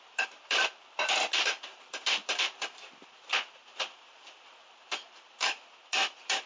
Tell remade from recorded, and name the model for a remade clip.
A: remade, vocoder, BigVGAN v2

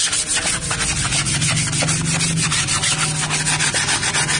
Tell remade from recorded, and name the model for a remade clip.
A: recorded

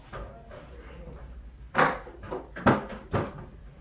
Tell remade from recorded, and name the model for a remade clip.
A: recorded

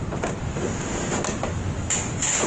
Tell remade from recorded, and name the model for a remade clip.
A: recorded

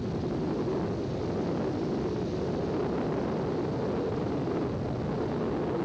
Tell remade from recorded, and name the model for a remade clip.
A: recorded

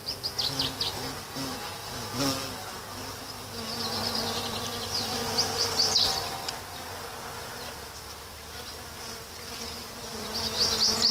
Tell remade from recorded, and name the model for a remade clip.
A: recorded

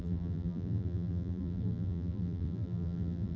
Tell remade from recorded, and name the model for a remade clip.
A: remade, vocoder, BigVGAN v2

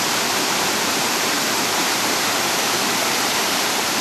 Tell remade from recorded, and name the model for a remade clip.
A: remade, vocoder, BigVGAN v2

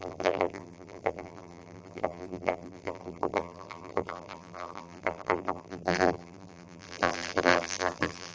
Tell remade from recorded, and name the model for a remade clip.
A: remade, vocoder, BigVGAN v2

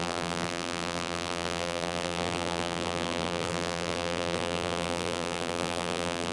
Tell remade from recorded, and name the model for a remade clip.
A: remade, vocoder, BigVGAN v2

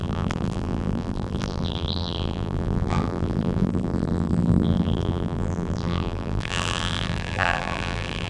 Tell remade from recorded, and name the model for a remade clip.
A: remade, vocoder, BigVGAN v2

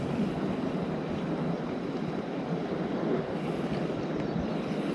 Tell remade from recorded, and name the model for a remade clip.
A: remade, vocoder, BigVGAN v2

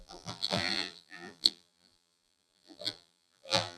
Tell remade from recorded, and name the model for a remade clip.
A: remade, vocoder, BigVGAN v2